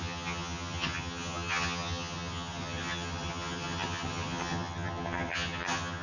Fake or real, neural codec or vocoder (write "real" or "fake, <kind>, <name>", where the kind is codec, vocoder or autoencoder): fake, vocoder, HiFi-GAN